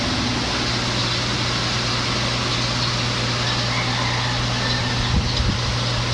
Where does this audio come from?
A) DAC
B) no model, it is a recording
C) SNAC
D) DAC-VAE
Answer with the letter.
B